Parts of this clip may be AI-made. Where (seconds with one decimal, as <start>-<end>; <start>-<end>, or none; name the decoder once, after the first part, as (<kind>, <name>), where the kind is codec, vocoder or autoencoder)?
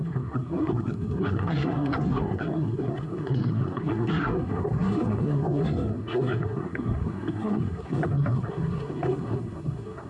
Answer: 0.0-10.1 (codec, SNAC)